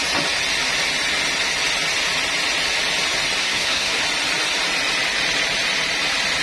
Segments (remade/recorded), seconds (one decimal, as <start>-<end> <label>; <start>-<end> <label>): 0.0-3.4 recorded; 3.4-4.0 remade; 4.0-6.4 recorded